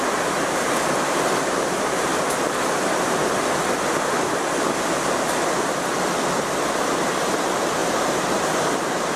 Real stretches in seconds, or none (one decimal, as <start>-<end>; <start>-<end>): 2.1-6.7